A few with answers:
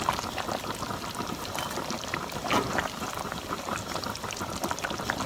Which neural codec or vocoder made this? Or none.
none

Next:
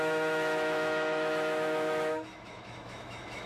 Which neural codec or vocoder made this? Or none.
autoencoder, DAC-VAE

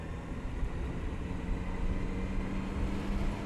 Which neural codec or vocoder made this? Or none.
none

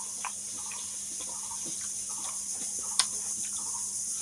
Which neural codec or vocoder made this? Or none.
none